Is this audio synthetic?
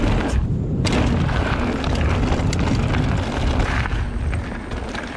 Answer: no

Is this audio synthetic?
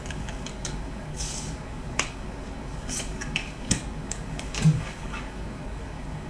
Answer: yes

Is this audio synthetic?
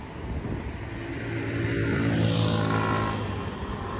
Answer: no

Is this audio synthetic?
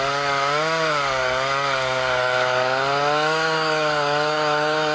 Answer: yes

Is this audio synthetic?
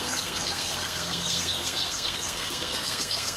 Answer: yes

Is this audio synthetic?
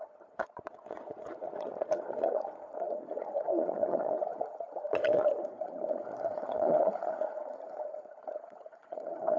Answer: yes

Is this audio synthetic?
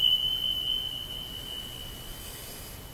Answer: no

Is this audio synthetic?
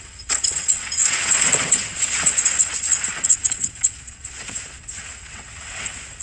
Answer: yes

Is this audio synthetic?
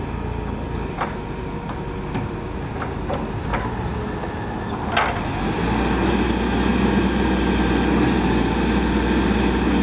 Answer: no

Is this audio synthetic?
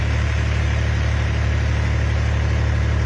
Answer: no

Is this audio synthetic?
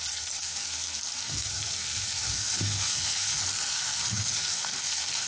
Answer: yes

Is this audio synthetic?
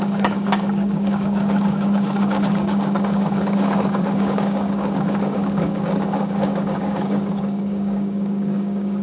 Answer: yes